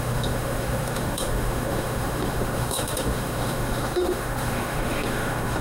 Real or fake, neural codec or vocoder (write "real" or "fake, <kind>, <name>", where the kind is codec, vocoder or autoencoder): fake, autoencoder, DAC-VAE